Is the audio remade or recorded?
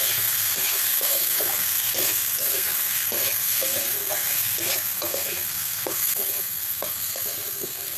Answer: remade